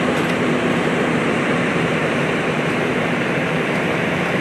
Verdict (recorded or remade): remade